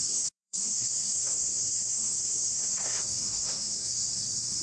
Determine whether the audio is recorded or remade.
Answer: remade